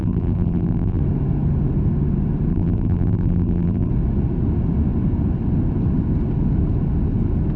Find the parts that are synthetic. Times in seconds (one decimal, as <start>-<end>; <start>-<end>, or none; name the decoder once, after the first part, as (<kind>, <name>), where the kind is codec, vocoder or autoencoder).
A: 0.0-1.0 (vocoder, BigVGAN v2); 2.5-3.9